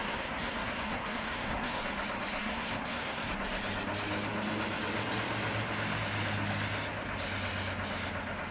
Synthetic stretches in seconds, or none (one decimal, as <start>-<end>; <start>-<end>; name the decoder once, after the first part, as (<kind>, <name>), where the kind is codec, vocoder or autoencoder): 0.0-1.8 (codec, SNAC); 2.4-3.3